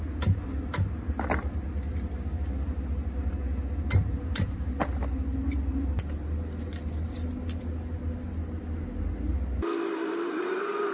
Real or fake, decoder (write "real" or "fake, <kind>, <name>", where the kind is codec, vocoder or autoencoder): real